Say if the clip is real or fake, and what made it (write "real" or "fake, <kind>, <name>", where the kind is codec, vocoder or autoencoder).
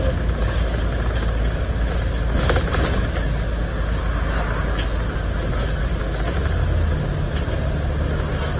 real